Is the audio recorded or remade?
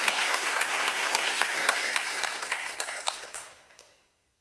remade